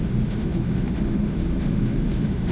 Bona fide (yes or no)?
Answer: no